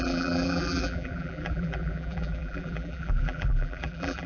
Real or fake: fake